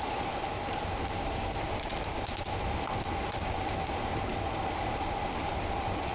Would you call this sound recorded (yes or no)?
yes